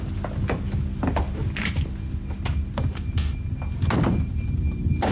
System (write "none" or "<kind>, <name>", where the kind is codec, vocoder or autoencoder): none